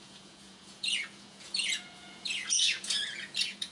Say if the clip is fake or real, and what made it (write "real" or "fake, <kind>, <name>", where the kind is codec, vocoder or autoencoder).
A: fake, vocoder, Vocos